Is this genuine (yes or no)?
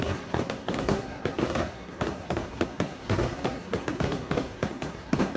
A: no